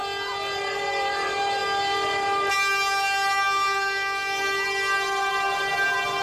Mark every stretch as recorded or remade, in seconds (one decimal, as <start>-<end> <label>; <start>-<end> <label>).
0.0-0.6 recorded; 0.6-1.6 remade; 1.6-5.3 recorded; 5.3-6.2 remade